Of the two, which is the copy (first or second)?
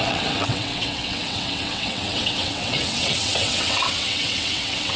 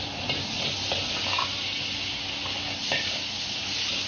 first